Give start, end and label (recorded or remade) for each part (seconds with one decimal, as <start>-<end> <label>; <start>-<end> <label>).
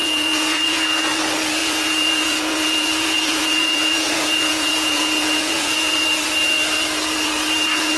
0.0-1.2 remade; 1.2-1.6 recorded; 1.6-6.0 remade; 6.0-8.0 recorded